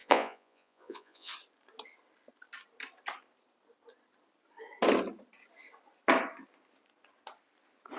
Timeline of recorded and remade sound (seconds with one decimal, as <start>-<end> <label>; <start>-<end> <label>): 0.0-1.3 remade; 1.3-8.0 recorded